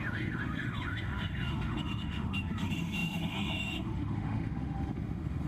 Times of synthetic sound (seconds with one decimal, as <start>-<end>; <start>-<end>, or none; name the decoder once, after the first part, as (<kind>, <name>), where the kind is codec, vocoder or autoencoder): 0.0-5.5 (autoencoder, DAC-VAE)